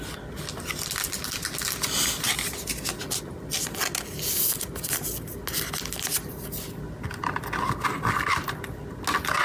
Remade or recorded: recorded